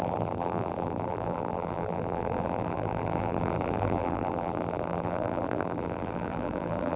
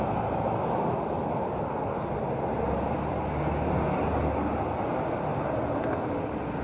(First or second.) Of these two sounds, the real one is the second